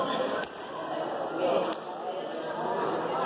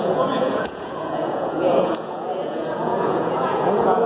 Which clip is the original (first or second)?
first